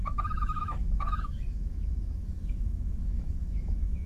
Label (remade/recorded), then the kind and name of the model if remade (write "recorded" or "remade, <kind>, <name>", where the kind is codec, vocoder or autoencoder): remade, autoencoder, DAC-VAE